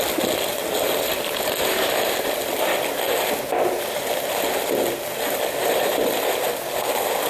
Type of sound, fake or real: real